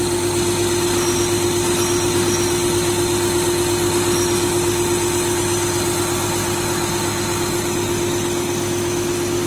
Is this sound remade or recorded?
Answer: recorded